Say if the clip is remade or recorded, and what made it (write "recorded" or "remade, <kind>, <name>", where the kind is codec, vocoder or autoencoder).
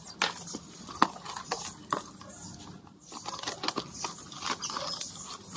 recorded